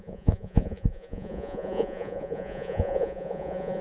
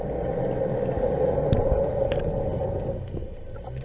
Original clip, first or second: second